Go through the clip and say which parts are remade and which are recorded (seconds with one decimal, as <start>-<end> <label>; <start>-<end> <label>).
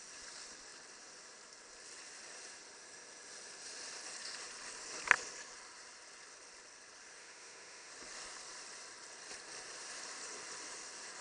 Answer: 0.0-7.2 recorded; 7.2-7.9 remade; 7.9-11.2 recorded